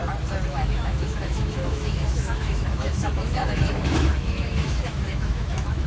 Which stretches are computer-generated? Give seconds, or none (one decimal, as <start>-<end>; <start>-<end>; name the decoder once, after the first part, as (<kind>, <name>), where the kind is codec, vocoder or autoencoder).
0.5-5.9 (autoencoder, DAC-VAE)